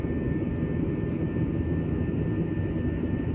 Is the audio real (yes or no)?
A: yes